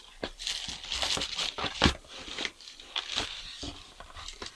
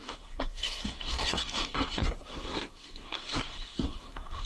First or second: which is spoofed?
second